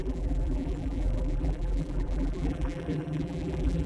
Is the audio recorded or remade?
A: remade